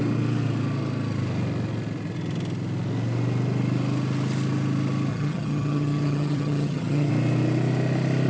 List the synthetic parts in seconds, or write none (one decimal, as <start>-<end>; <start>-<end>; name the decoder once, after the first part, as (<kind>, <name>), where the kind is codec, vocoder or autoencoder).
5.1-7.1 (vocoder, HiFi-GAN)